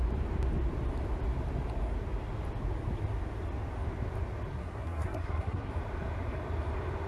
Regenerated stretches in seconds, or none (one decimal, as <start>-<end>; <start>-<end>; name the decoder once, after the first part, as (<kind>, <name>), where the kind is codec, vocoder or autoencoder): 4.5-5.7 (codec, SNAC)